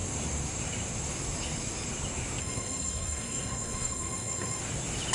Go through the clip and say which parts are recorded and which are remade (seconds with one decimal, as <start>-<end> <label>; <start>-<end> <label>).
0.0-2.4 recorded; 2.4-4.6 remade; 4.6-5.1 recorded